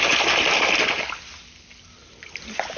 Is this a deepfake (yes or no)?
no